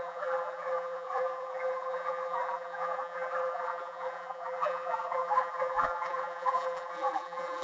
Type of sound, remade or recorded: remade